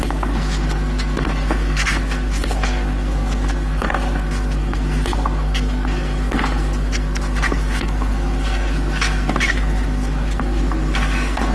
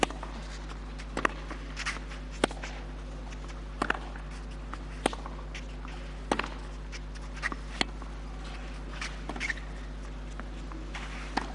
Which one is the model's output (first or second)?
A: first